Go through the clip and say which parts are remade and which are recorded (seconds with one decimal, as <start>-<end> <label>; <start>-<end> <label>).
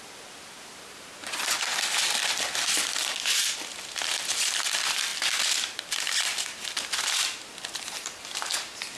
0.0-9.0 recorded